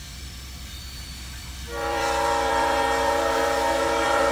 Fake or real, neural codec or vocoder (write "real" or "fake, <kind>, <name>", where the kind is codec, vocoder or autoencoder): fake, vocoder, BigVGAN v2